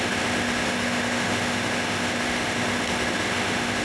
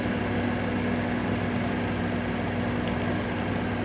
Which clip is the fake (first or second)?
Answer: first